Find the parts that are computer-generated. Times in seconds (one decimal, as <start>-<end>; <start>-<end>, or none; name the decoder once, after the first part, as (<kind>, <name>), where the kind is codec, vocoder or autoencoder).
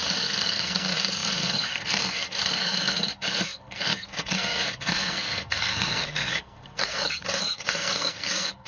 0.0-8.7 (codec, SNAC)